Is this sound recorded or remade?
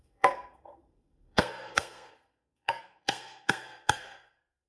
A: remade